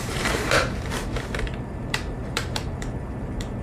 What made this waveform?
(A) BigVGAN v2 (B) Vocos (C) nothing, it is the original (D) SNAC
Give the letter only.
A